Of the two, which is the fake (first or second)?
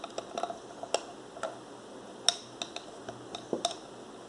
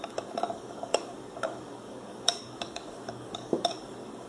second